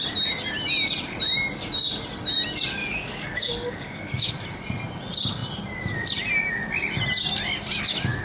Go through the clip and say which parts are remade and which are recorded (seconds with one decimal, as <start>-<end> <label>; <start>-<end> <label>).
0.0-2.8 recorded; 2.8-4.3 remade; 4.3-8.2 recorded